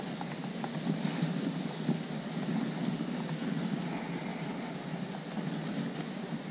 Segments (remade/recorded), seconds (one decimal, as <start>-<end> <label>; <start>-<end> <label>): 0.0-6.5 recorded

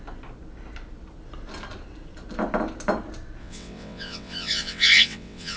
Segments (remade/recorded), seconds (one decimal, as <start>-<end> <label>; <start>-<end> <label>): 0.0-3.4 recorded; 3.4-5.6 remade

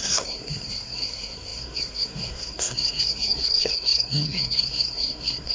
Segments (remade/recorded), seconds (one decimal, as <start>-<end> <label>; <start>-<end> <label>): 0.0-5.5 remade

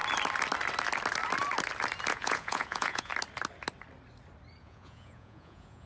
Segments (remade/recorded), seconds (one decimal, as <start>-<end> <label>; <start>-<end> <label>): 0.0-2.1 recorded; 2.1-3.1 remade; 3.1-4.6 recorded; 4.6-5.9 remade

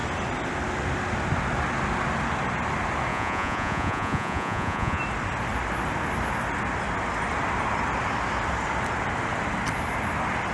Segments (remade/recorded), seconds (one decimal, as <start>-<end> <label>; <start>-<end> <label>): 0.0-3.1 recorded; 3.1-5.0 remade; 5.0-10.5 recorded

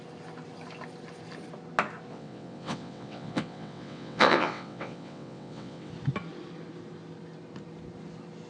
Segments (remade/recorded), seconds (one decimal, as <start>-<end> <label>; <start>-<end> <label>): 0.0-2.1 recorded; 2.1-5.9 remade; 5.9-8.5 recorded